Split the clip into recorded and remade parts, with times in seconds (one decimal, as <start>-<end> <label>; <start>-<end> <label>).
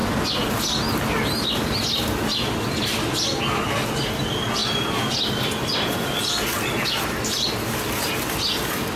0.0-9.0 recorded